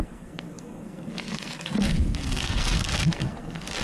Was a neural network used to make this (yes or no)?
yes